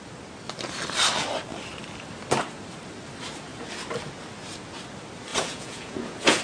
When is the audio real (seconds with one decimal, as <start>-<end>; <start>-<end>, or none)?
0.0-5.3